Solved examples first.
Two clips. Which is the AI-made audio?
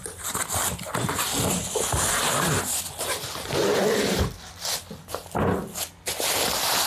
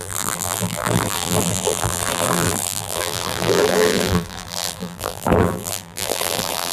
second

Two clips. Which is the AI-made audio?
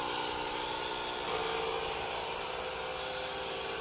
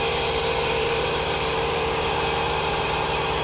second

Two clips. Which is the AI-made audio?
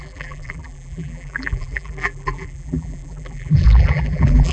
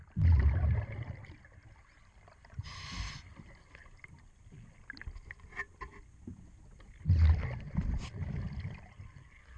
first